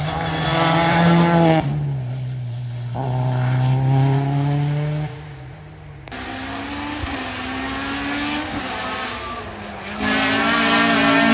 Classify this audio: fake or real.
real